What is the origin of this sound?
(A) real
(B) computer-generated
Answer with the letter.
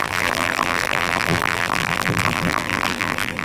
B